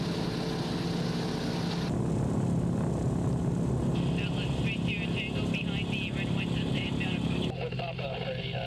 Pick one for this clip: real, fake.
real